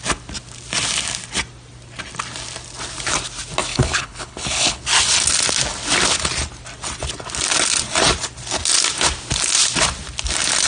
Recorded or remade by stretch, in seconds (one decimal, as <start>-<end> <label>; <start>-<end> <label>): 0.0-3.7 recorded; 3.7-4.8 remade; 4.8-10.7 recorded